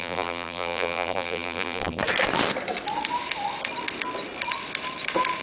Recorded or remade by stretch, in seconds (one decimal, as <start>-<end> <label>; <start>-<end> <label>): 0.0-2.0 remade; 2.0-5.4 recorded